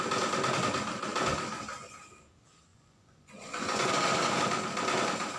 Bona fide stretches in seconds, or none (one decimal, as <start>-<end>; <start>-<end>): 0.0-2.7; 3.9-5.4